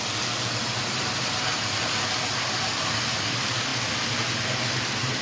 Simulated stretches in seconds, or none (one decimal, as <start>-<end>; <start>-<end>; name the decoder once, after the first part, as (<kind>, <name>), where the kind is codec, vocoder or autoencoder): none